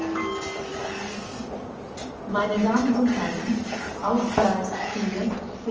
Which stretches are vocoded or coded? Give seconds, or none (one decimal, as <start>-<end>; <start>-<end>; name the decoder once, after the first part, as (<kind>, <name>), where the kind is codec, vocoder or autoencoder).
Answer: none